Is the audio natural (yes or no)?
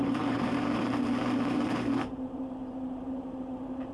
no